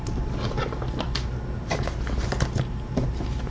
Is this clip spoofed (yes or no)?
no